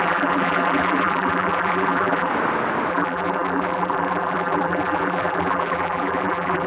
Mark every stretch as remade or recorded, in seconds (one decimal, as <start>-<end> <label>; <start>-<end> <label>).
0.0-2.3 remade; 2.3-2.9 recorded; 2.9-6.7 remade